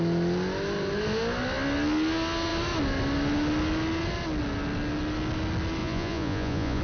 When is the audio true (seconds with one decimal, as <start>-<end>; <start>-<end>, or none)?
0.0-5.8